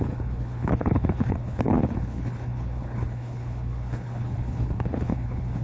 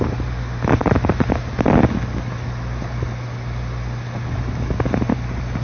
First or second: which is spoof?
first